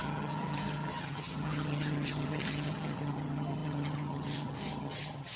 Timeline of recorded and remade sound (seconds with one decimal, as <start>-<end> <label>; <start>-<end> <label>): 0.0-5.4 remade